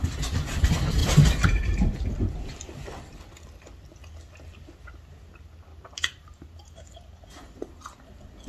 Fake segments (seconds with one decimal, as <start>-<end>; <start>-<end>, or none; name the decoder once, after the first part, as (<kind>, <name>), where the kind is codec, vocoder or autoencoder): 1.0-2.3 (vocoder, BigVGAN v2); 5.7-7.4